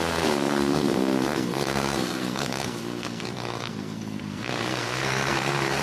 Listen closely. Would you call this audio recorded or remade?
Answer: remade